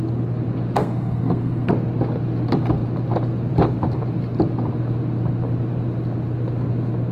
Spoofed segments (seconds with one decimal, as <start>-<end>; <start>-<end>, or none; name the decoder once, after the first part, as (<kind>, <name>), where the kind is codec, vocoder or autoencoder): 0.8-1.7 (codec, SNAC)